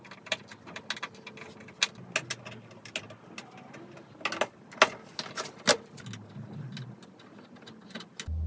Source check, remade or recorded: recorded